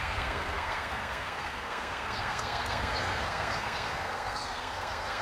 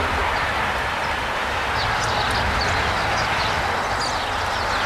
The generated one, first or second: first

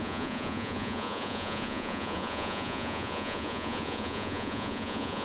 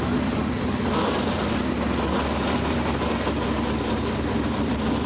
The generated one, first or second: first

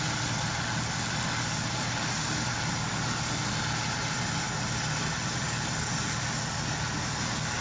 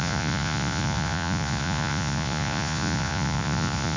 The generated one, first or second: second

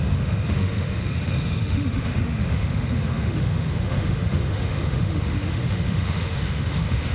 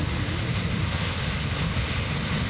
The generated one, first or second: first